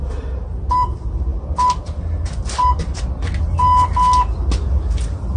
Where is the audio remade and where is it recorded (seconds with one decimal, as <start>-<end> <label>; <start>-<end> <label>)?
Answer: 0.0-5.4 recorded